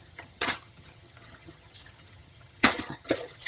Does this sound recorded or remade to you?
remade